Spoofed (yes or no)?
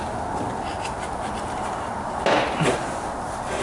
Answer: no